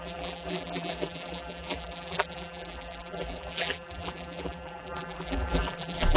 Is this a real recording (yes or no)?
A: no